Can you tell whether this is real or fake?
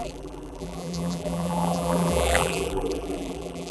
fake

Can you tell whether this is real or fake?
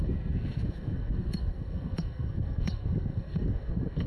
fake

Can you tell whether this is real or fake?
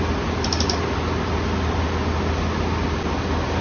real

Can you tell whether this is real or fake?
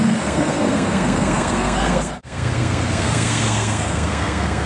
fake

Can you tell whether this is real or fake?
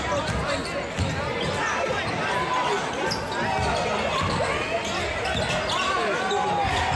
real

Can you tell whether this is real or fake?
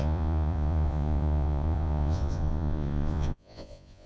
fake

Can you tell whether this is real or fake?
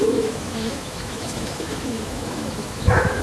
fake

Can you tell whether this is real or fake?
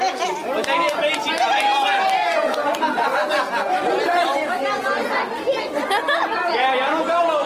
real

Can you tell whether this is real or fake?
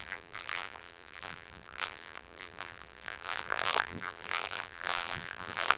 fake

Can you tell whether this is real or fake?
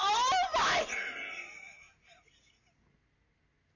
real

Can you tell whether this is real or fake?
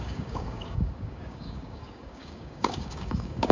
fake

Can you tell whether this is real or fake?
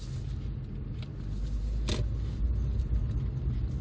real